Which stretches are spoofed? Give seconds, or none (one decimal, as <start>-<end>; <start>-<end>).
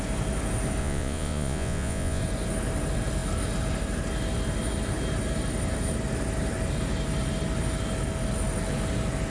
0.8-2.2